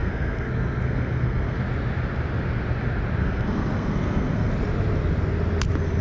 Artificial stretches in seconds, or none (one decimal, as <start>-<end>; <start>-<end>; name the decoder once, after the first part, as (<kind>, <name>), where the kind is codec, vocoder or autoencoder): 0.0-1.6 (codec, SNAC); 3.2-4.5